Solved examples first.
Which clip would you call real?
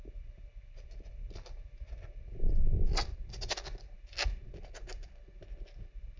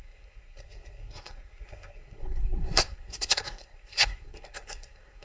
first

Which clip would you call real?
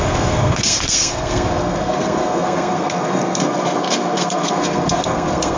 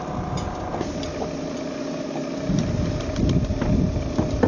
second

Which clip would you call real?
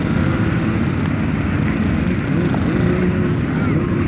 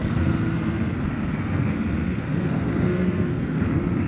first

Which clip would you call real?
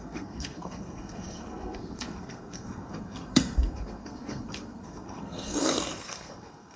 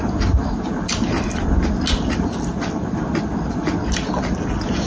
second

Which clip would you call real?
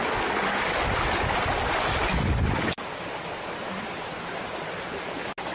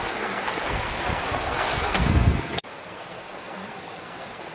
first